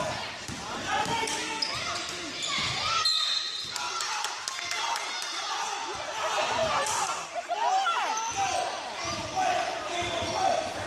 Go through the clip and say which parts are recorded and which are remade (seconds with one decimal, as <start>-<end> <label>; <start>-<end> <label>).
0.0-10.9 recorded